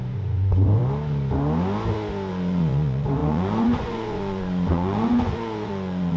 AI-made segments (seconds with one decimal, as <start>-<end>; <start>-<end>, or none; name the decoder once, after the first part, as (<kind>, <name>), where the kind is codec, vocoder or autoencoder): 0.0-0.8 (vocoder, Vocos); 2.3-6.2